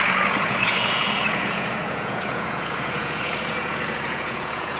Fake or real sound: fake